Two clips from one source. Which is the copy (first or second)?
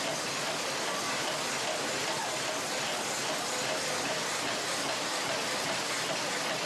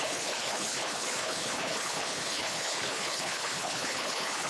second